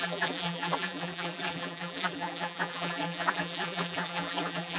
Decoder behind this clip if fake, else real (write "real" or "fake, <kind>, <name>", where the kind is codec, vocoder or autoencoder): fake, vocoder, BigVGAN v2